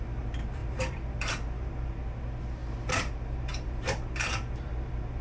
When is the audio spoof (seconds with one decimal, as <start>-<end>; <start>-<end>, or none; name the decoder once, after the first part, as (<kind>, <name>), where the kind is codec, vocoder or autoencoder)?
0.0-2.6 (vocoder, BigVGAN v2); 3.1-5.2